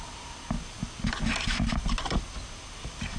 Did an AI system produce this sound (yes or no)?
no